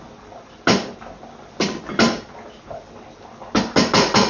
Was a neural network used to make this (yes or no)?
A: no